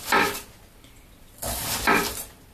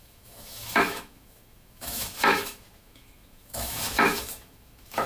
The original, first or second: first